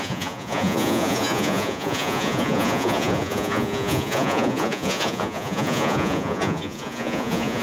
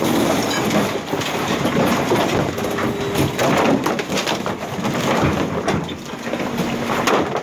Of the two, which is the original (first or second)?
second